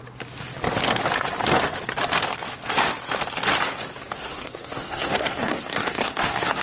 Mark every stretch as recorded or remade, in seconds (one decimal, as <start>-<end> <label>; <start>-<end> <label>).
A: 0.0-4.2 recorded; 4.2-6.6 remade